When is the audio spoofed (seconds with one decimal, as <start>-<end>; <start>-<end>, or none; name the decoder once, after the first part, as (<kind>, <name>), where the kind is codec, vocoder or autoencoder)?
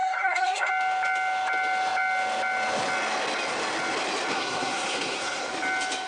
0.0-0.7 (codec, SNAC); 4.3-5.5